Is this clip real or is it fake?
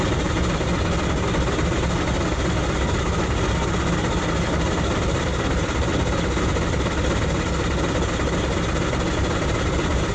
real